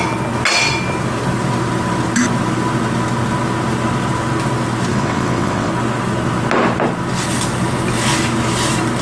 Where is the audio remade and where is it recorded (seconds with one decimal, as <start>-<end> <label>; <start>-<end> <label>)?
0.0-4.9 recorded; 4.9-5.7 remade; 5.7-9.0 recorded